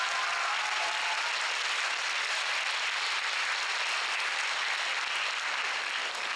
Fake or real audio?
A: real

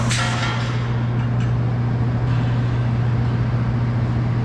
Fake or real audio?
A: real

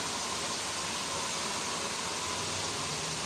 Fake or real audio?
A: real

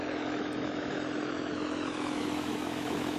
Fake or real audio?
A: fake